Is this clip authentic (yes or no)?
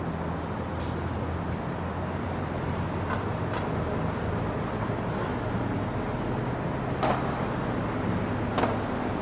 yes